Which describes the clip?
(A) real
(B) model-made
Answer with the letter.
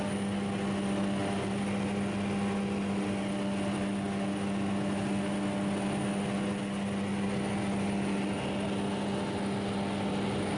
A